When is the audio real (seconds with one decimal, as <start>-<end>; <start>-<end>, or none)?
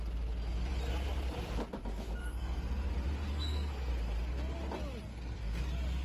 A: 0.0-2.2; 2.9-3.3; 3.9-5.1; 5.6-6.0